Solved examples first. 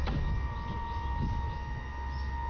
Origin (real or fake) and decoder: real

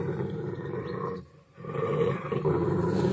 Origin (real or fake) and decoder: fake, vocoder, BigVGAN v2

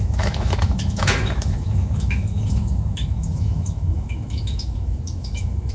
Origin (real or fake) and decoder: fake, autoencoder, DAC-VAE